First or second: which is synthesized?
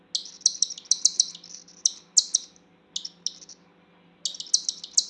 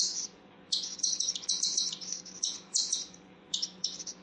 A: second